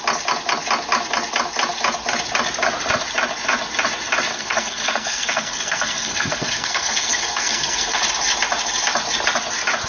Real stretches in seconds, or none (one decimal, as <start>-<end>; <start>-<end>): 0.0-4.3; 8.0-9.9